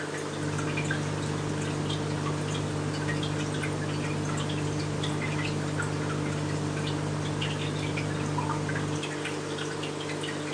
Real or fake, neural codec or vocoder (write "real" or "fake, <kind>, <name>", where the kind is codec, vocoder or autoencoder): real